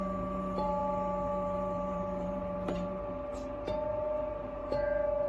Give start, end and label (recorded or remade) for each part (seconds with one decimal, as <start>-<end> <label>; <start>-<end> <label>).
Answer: 0.0-4.6 recorded; 4.6-5.3 remade